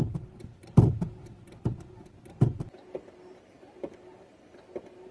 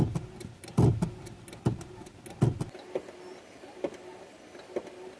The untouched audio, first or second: second